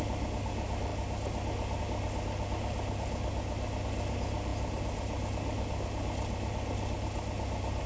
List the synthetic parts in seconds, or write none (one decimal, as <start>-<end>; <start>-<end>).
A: none